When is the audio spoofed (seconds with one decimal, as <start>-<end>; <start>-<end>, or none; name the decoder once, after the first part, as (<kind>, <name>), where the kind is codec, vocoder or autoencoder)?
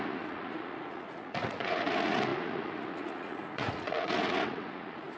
0.0-5.2 (vocoder, Vocos)